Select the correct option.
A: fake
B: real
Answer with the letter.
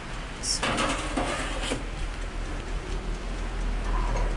B